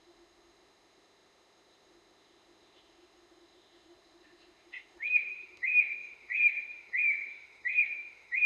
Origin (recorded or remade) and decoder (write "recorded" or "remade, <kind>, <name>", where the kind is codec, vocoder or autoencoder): remade, autoencoder, DAC-VAE